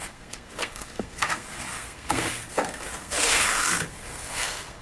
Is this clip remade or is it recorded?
remade